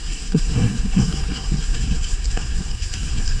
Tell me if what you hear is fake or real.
fake